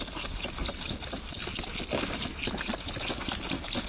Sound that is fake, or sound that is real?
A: real